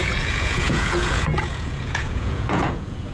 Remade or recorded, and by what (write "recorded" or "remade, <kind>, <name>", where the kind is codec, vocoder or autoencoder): remade, vocoder, Vocos